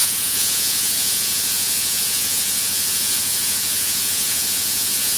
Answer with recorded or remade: remade